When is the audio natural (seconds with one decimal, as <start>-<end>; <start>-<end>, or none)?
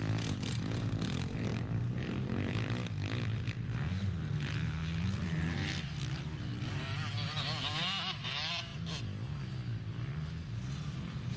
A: 0.0-11.4